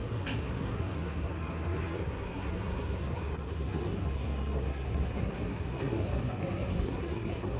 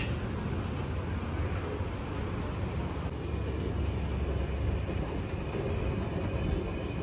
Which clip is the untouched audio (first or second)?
second